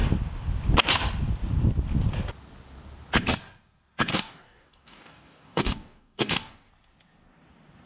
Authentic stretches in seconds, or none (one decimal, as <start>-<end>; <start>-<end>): 0.0-4.1; 6.7-7.9

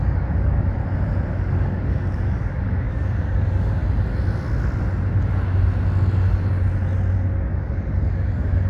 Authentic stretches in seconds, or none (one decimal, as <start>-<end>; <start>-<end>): 0.8-1.3; 3.8-7.5

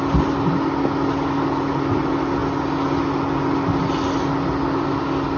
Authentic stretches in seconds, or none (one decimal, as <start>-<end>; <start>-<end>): 0.0-5.4

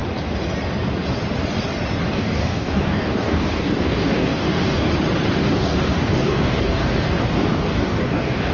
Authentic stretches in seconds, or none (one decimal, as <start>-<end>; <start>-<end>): 0.0-2.1; 4.9-5.5

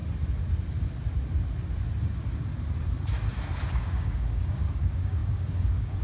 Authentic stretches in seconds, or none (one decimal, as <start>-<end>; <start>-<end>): 0.0-3.6

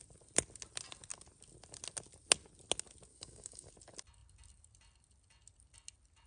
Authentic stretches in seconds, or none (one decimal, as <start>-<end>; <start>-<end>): 0.0-3.1; 3.7-6.3

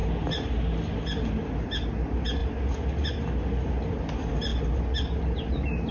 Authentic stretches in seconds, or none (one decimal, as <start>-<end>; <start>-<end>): 0.0-5.9

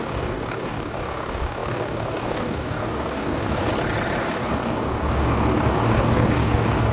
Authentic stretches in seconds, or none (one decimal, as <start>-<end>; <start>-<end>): 3.7-4.2